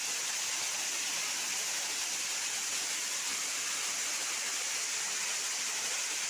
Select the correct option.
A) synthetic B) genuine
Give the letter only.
B